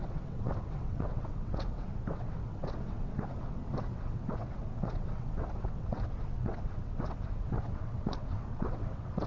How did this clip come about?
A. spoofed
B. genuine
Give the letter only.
A